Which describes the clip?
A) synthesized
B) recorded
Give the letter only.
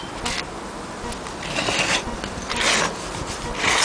B